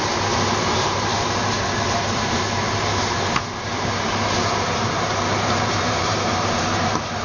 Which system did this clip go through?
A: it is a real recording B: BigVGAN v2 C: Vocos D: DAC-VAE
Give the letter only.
B